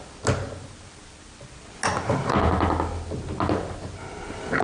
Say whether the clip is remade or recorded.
recorded